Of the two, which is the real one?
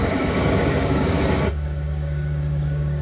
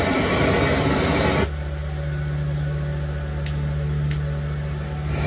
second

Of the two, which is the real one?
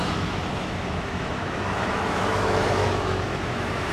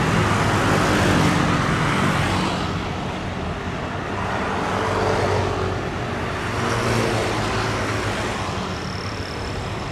second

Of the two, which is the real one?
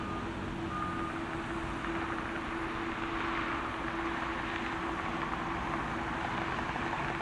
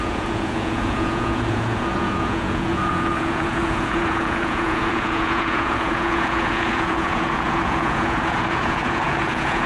first